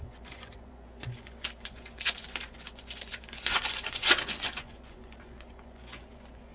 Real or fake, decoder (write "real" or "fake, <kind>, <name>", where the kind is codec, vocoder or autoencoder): fake, vocoder, Vocos